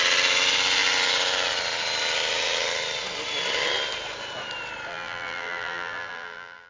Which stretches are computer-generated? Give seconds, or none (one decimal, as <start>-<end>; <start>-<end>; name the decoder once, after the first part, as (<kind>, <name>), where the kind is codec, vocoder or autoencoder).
4.9-6.7 (vocoder, BigVGAN v2)